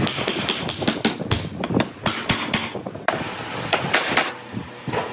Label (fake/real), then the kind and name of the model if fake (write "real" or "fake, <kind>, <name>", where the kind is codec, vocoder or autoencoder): real